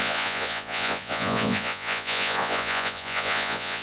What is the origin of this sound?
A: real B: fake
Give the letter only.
B